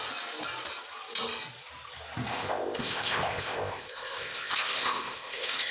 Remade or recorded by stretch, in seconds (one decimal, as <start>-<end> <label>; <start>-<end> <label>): 0.0-2.3 recorded; 2.3-5.7 remade